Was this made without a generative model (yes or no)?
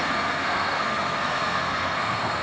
no